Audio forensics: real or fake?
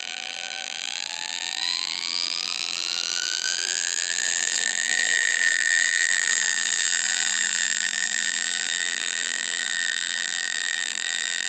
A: fake